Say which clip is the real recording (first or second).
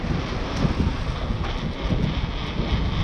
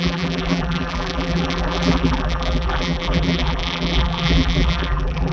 first